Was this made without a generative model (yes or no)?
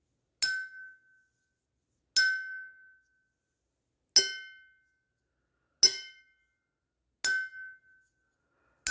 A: yes